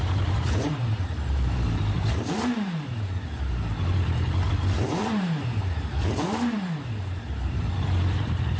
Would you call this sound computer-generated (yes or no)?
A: yes